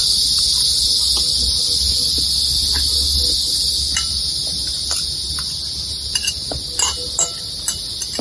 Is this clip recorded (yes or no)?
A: yes